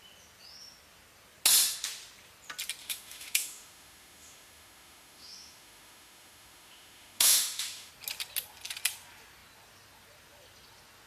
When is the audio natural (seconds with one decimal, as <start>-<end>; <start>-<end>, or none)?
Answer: 0.0-2.8; 7.9-11.1